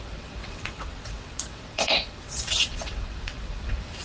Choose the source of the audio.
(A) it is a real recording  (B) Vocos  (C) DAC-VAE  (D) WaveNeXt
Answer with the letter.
D